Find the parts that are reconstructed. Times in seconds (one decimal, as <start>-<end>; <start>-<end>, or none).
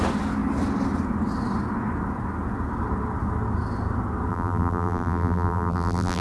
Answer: 4.3-6.2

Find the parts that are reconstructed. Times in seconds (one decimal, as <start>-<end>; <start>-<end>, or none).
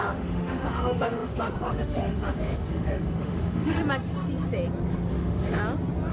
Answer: 0.0-3.8; 5.1-5.6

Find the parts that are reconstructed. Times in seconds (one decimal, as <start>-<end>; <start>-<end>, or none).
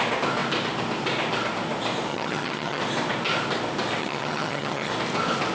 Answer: 2.1-2.8; 4.0-4.9